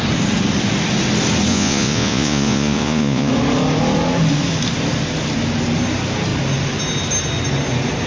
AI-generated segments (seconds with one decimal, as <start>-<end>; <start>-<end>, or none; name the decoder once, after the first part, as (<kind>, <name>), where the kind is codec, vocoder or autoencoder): 1.5-3.3 (vocoder, Vocos)